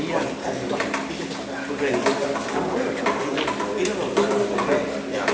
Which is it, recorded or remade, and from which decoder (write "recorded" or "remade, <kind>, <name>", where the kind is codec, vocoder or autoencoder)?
recorded